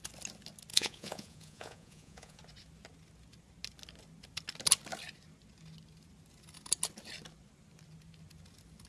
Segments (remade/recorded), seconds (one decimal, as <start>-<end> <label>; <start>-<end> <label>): 0.0-0.7 recorded; 0.7-2.4 remade; 2.4-8.9 recorded